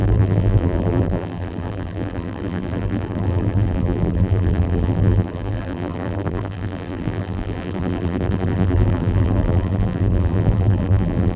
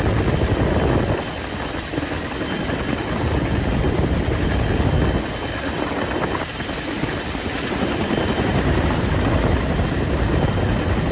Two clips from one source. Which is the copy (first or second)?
first